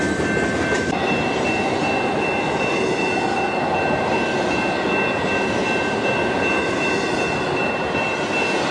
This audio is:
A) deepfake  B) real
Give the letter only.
B